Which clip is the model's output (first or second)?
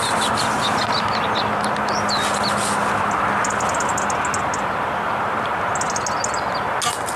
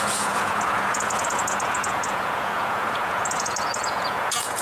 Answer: second